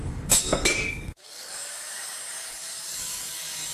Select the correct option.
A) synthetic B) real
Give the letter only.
A